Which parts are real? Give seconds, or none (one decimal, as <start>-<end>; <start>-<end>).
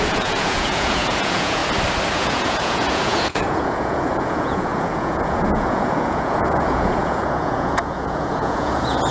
1.6-2.1